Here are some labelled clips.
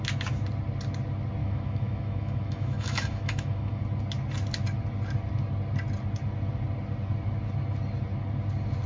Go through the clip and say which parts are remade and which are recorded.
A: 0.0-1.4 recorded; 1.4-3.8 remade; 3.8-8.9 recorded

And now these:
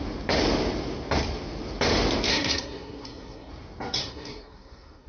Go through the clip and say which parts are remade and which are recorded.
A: 0.0-2.3 recorded; 2.3-3.5 remade; 3.5-4.0 recorded; 4.0-5.1 remade